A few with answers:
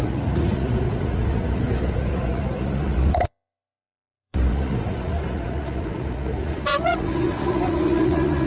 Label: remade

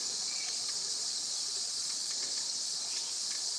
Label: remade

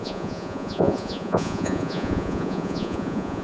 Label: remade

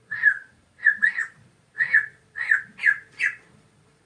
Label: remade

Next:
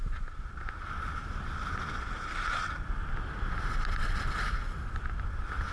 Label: recorded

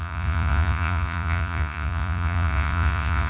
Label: remade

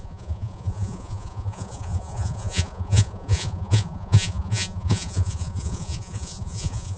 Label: remade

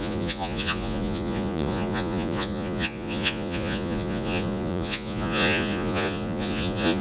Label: remade